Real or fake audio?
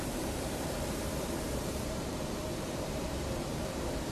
fake